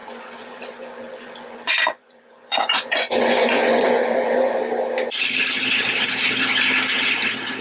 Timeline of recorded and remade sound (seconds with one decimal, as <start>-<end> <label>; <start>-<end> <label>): 0.0-4.6 remade; 4.6-7.6 recorded